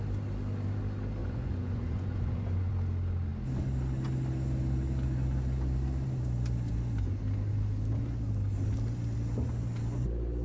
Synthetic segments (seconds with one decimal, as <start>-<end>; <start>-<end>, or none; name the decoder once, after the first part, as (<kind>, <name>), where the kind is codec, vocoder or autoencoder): 1.2-2.7 (vocoder, Vocos)